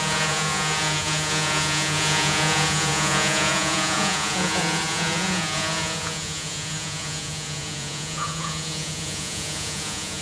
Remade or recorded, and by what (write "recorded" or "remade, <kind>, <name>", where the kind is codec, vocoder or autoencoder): remade, vocoder, Vocos